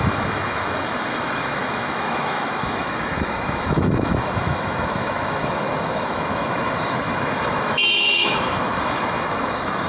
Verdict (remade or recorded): remade